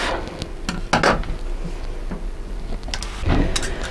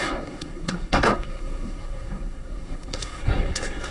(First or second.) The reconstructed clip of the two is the second